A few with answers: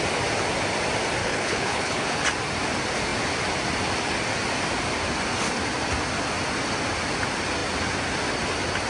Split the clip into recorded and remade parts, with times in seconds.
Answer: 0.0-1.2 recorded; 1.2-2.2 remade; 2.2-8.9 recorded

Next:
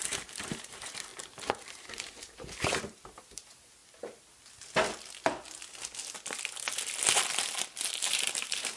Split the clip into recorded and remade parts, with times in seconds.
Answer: 0.0-3.8 remade; 3.8-7.9 recorded; 7.9-8.8 remade

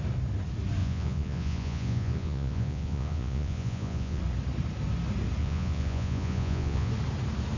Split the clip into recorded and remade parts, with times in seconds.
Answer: 0.0-0.8 recorded; 0.8-4.2 remade; 4.2-5.4 recorded; 5.4-6.9 remade; 6.9-7.6 recorded

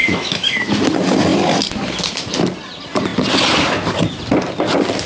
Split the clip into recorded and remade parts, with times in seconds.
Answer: 0.0-0.7 remade; 0.7-5.1 recorded

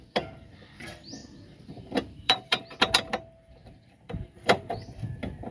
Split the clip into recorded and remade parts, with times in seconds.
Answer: 0.0-1.2 recorded; 1.2-2.8 remade; 2.8-3.6 recorded; 3.6-4.7 remade; 4.7-5.5 recorded

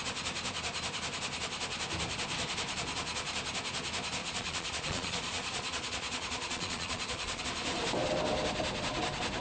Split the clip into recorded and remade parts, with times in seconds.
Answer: 0.0-4.2 recorded; 4.2-7.4 remade; 7.4-9.4 recorded

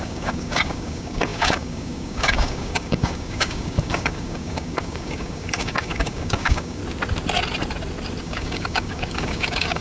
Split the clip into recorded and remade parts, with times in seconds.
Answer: 0.0-6.8 remade; 6.8-8.2 recorded; 8.2-9.8 remade

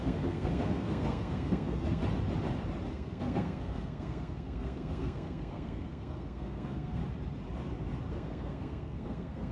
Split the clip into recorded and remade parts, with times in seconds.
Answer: 0.0-2.0 remade; 2.0-2.9 recorded; 2.9-7.0 remade; 7.0-8.1 recorded; 8.1-9.5 remade